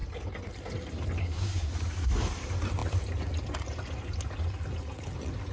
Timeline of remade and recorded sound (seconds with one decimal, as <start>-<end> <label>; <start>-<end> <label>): 0.0-1.2 recorded; 1.2-1.7 remade; 1.7-5.5 recorded